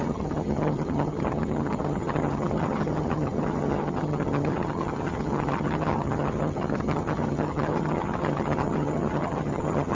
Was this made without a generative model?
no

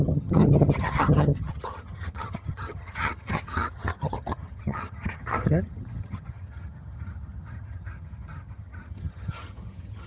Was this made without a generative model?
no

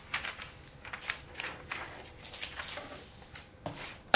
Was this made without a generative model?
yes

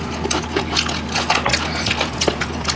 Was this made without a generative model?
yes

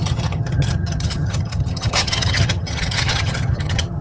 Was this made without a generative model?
no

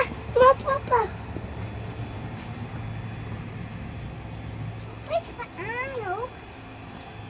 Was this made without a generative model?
yes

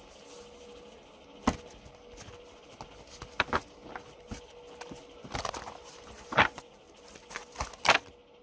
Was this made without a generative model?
yes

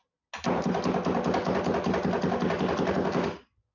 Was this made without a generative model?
yes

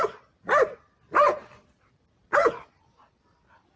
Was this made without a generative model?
yes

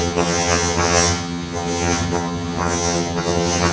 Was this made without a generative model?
no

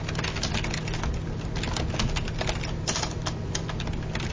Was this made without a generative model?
yes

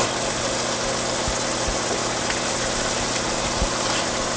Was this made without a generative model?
yes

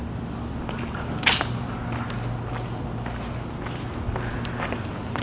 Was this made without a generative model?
yes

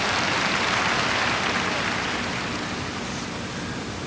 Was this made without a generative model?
yes